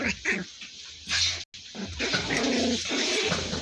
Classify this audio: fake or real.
real